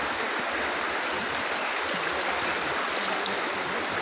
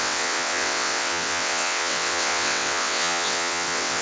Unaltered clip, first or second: first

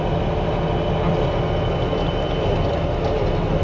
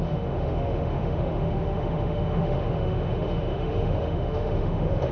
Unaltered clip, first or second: first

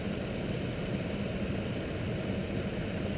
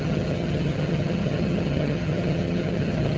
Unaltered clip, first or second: first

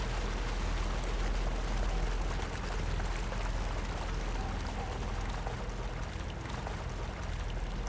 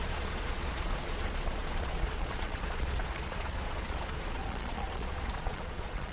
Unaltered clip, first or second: first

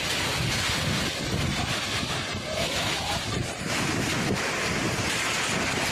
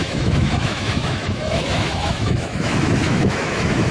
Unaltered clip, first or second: first